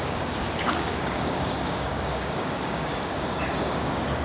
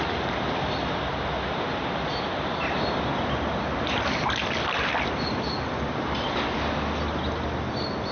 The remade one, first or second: first